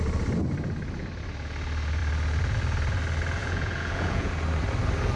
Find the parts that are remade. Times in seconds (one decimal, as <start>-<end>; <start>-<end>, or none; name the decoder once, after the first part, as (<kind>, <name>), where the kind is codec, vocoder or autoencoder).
3.4-4.3 (vocoder, Vocos)

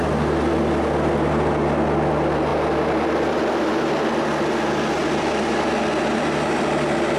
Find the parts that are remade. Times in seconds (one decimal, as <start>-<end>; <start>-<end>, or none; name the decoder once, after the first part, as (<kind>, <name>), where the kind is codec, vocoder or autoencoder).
none

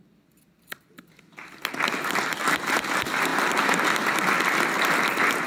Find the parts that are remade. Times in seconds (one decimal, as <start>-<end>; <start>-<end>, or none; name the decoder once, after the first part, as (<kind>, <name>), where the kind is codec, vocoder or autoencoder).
none